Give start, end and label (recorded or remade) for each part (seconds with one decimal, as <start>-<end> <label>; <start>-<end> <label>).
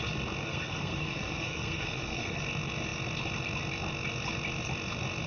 0.0-0.4 recorded; 0.4-2.4 remade; 2.4-5.3 recorded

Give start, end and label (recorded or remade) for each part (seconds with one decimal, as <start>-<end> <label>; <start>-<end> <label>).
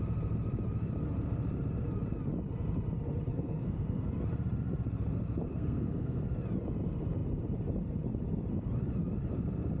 0.0-3.3 recorded; 3.3-4.1 remade; 4.1-5.5 recorded; 5.5-6.2 remade; 6.2-9.8 recorded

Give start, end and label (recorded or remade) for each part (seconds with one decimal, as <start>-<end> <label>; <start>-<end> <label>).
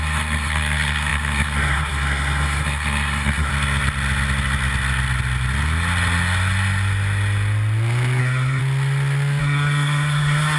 0.0-3.5 remade; 3.5-8.2 recorded; 8.2-8.6 remade; 8.6-9.4 recorded; 9.4-10.6 remade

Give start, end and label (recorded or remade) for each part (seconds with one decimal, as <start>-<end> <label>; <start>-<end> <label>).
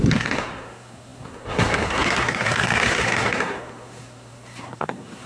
0.0-5.3 remade